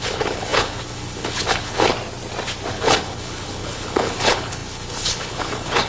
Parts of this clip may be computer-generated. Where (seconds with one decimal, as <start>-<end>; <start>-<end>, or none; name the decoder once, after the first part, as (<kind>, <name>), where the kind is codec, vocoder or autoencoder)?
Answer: 0.0-1.9 (codec, HILCodec); 2.7-5.9